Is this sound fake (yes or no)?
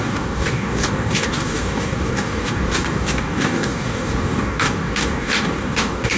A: yes